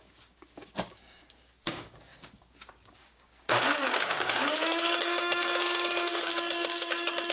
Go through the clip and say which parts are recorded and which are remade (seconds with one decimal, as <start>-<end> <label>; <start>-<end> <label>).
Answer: 0.0-7.3 remade